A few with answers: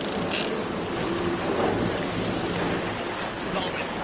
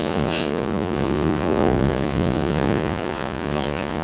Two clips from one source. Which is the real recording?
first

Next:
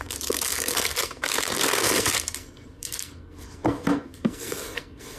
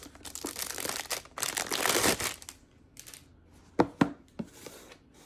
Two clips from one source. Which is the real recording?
second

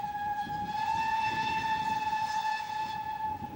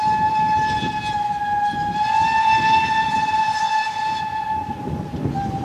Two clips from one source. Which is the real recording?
second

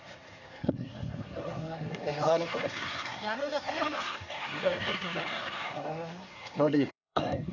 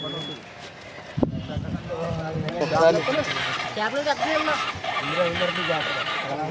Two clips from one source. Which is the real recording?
second